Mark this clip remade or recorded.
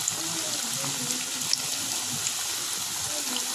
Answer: recorded